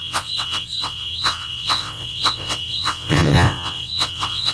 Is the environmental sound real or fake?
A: fake